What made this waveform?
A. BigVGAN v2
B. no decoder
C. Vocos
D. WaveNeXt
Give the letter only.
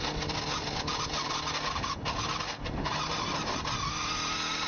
B